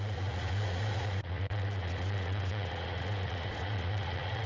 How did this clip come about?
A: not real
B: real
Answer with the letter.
A